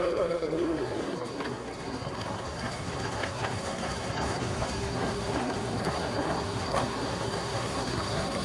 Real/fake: fake